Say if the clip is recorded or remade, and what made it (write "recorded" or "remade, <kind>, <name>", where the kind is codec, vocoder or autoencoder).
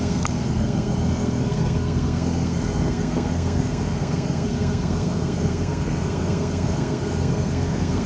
remade, codec, SNAC